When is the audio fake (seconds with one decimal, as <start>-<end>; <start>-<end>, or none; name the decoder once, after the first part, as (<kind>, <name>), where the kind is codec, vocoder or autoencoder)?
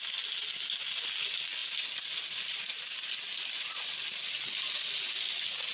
none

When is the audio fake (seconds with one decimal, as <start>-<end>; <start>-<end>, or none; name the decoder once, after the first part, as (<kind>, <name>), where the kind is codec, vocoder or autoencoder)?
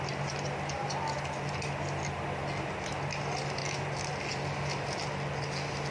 0.0-2.4 (vocoder, BigVGAN v2); 3.2-3.6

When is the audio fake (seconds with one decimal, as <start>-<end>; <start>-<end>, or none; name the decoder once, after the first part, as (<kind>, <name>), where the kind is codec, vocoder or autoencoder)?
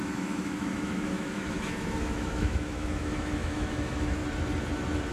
0.0-4.2 (autoencoder, DAC-VAE)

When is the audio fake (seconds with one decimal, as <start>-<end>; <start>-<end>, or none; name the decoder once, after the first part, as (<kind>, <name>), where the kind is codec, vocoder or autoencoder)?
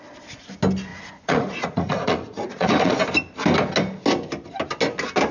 0.9-2.9 (vocoder, Vocos)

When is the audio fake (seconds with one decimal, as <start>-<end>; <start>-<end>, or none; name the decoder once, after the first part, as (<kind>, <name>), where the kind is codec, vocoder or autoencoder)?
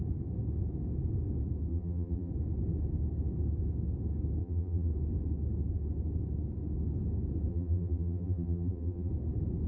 1.7-2.3 (vocoder, BigVGAN v2); 4.4-4.9; 7.5-9.1